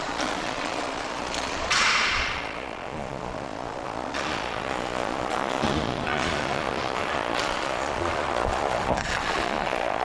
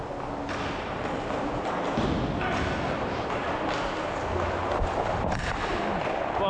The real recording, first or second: second